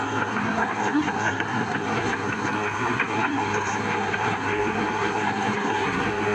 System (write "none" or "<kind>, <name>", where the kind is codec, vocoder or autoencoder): codec, SNAC